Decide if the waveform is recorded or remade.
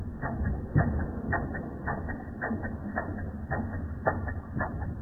recorded